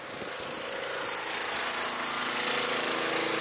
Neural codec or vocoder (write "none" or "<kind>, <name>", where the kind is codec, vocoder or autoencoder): none